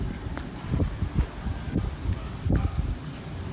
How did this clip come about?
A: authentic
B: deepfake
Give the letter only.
A